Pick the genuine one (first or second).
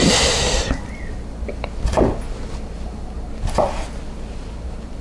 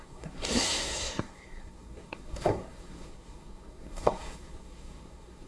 first